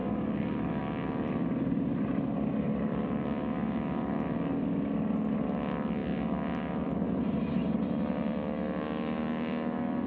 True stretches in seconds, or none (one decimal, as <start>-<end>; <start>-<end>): 0.0-10.1